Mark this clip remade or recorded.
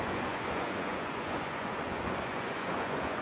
remade